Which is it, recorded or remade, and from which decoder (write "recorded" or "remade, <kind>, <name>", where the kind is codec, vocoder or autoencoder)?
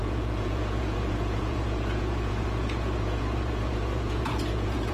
remade, vocoder, Vocos